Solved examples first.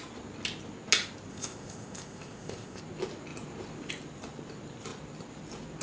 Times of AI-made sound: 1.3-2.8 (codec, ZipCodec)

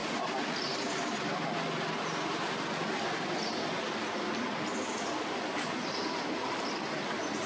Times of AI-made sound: none

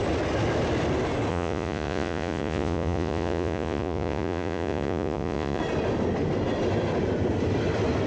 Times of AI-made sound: 1.3-5.6 (vocoder, Vocos)

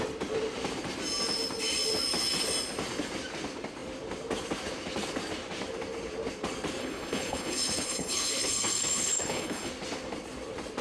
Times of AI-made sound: 6.8-9.7 (codec, HILCodec)

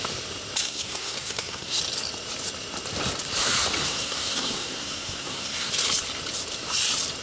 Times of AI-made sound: 0.6-1.8 (codec, SNAC); 3.8-5.7

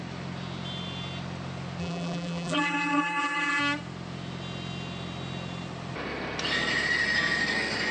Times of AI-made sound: 1.8-3.6 (vocoder, BigVGAN v2)